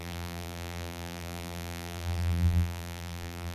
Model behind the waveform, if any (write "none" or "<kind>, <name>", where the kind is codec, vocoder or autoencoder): vocoder, BigVGAN v2